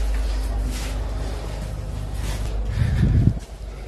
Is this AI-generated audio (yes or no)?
no